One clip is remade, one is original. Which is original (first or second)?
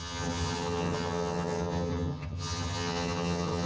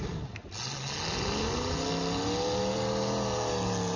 second